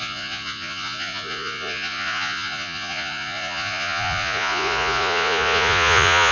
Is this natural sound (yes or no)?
no